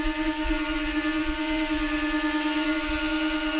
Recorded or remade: recorded